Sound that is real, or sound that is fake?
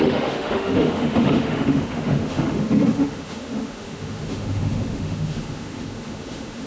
fake